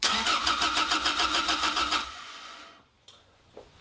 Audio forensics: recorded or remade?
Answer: remade